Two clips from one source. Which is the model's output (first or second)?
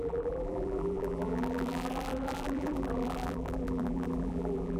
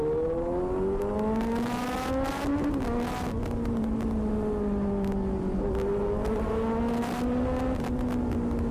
first